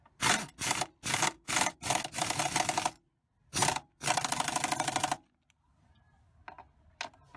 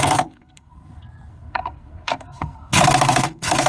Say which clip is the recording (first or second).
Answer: first